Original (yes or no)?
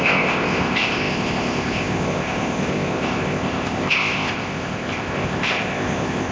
no